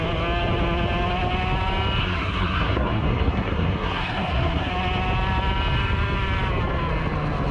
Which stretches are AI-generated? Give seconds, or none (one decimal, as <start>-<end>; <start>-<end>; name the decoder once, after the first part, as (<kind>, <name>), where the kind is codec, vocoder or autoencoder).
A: 2.0-4.7 (codec, SNAC)